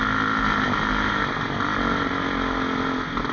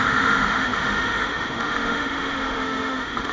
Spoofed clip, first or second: second